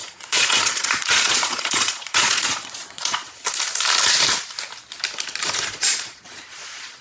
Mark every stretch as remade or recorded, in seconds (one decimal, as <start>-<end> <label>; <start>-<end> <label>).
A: 0.0-3.3 remade; 3.3-5.3 recorded; 5.3-7.0 remade